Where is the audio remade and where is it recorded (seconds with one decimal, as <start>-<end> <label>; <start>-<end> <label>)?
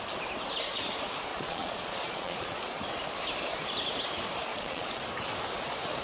0.0-1.3 recorded; 1.3-2.8 remade; 2.8-4.5 recorded; 4.5-5.0 remade; 5.0-6.0 recorded